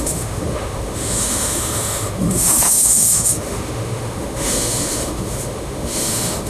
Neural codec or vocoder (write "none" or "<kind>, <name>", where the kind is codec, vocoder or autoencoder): autoencoder, DAC-VAE